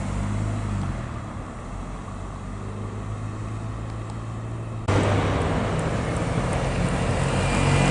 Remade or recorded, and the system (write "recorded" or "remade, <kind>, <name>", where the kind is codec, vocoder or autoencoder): recorded